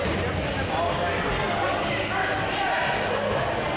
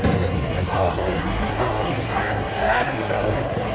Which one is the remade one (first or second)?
second